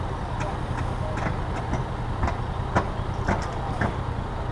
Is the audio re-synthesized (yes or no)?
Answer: no